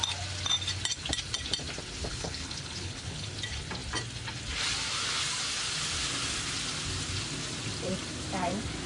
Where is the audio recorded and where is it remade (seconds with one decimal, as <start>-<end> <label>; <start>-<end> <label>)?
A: 0.0-2.1 recorded; 2.1-3.3 remade; 3.3-8.9 recorded